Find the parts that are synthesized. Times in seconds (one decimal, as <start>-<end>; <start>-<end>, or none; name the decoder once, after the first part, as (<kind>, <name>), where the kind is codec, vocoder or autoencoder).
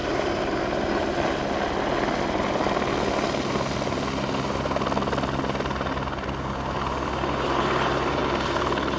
none